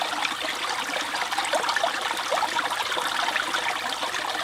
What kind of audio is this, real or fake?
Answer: real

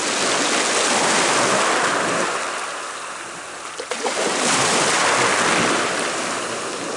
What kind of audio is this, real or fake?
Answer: real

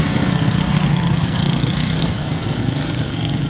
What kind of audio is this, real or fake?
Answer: fake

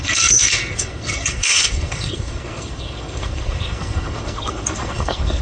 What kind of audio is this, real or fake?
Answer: fake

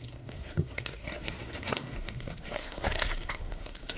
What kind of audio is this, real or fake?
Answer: fake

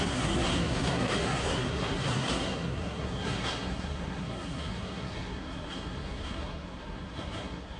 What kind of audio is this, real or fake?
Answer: fake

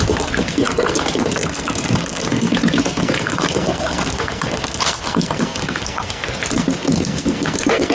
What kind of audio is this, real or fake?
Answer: fake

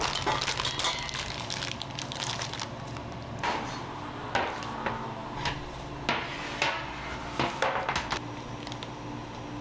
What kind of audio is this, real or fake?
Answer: real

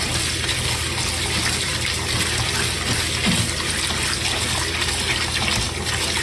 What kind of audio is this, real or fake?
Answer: real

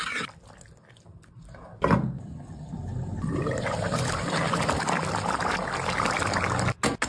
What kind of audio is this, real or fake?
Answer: real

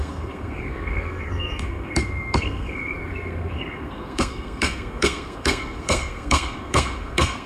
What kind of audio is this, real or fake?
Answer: fake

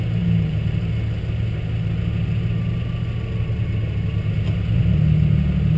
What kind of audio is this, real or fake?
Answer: real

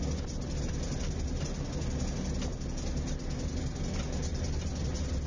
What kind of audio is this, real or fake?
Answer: real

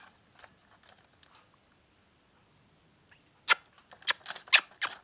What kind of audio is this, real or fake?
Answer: real